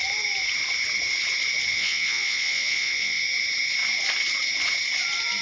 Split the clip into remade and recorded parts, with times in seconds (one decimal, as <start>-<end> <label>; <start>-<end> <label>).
0.0-1.7 recorded; 1.7-3.2 remade; 3.2-5.4 recorded